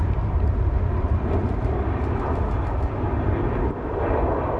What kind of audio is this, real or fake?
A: real